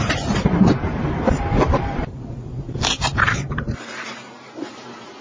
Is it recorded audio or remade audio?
remade